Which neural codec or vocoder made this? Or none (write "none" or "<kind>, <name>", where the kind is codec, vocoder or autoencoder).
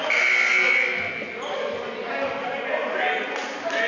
none